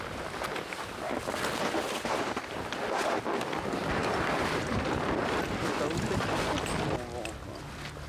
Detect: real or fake real